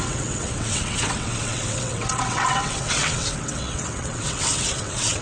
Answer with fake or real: fake